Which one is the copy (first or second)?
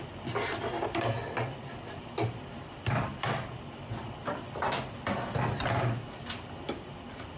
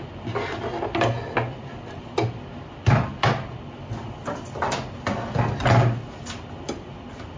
first